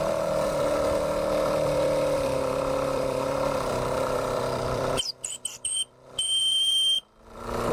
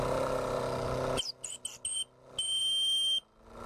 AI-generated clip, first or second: first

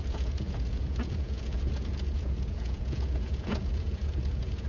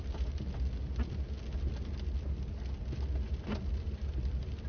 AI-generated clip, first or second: first